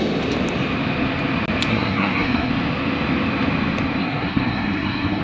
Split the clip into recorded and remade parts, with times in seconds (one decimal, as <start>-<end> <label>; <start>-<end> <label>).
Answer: 0.0-1.7 recorded; 1.7-2.5 remade; 2.5-4.0 recorded; 4.0-5.2 remade